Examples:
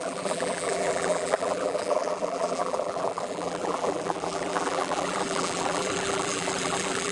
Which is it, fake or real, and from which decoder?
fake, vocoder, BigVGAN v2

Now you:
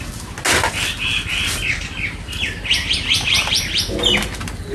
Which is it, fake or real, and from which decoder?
real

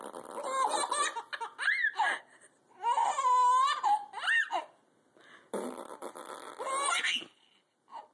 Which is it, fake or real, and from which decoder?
real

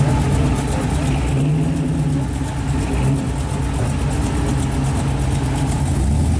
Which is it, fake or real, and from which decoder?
real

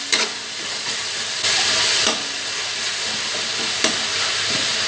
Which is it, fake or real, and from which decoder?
real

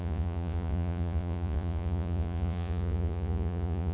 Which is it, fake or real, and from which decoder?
fake, vocoder, Vocos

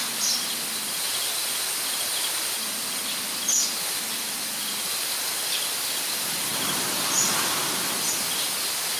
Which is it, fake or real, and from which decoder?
real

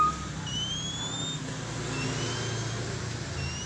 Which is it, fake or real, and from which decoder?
real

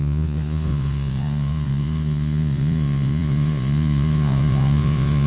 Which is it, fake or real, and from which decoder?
fake, vocoder, Vocos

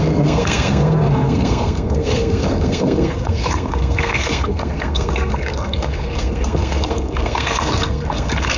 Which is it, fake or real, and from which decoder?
fake, codec, SNAC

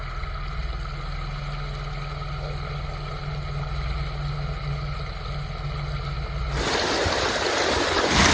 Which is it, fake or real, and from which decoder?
real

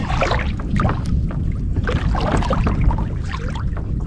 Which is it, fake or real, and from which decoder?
real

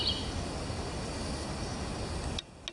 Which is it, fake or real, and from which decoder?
real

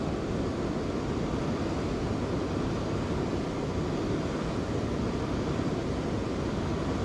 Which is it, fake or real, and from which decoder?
real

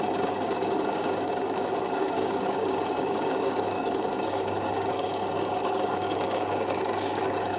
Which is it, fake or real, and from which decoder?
fake, codec, DAC